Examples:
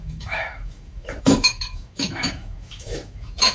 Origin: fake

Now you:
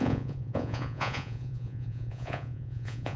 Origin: fake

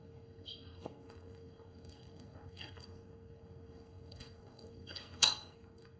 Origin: fake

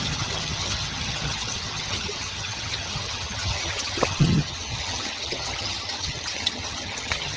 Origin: fake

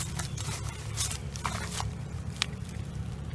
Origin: fake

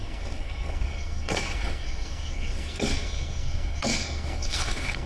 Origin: fake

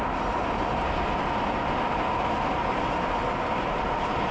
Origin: real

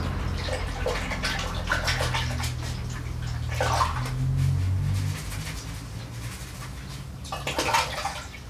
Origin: real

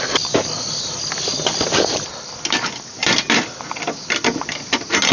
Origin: real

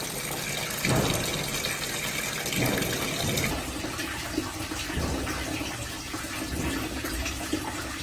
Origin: real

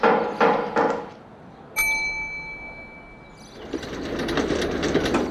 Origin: real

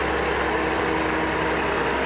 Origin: real